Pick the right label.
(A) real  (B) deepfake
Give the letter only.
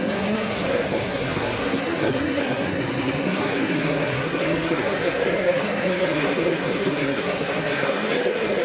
B